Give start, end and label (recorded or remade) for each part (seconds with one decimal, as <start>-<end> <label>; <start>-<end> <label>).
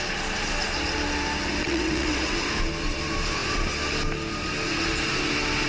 0.0-1.6 recorded; 1.6-2.5 remade; 2.5-5.7 recorded